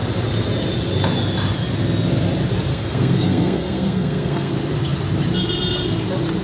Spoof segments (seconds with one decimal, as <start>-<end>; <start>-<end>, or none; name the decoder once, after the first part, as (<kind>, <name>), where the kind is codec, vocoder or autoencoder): 2.7-4.5 (codec, SNAC)